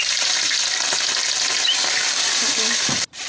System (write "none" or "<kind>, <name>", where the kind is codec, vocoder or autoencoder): none